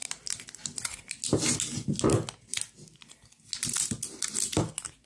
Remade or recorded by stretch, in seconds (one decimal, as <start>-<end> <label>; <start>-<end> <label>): 0.0-5.1 recorded